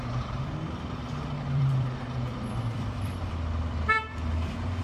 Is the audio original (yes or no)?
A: no